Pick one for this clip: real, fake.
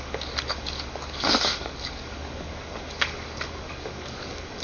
fake